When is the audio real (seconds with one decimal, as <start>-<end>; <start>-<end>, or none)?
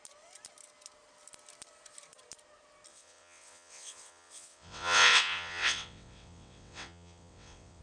0.0-2.9